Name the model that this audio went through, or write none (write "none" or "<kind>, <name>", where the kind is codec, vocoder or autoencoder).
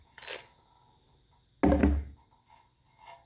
none